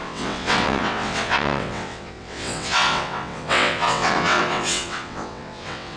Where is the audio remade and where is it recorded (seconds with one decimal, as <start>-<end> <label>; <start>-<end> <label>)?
0.0-6.0 remade